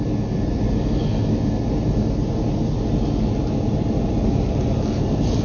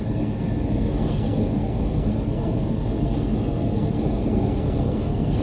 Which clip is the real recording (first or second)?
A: first